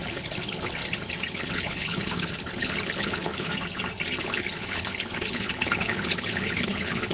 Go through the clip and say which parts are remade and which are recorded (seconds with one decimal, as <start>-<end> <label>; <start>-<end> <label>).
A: 0.0-0.8 remade; 0.8-1.3 recorded; 1.3-3.5 remade; 3.5-4.2 recorded; 4.2-7.1 remade